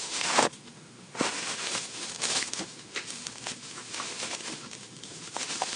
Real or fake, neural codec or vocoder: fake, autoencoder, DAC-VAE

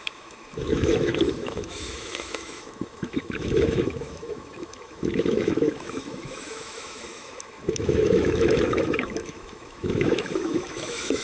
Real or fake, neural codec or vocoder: fake, autoencoder, DAC-VAE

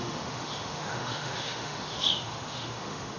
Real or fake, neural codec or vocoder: fake, autoencoder, DAC-VAE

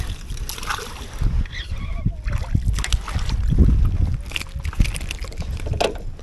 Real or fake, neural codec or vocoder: real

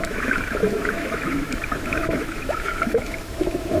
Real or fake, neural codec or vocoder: fake, autoencoder, DAC-VAE